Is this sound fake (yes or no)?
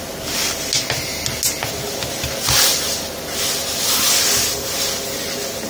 no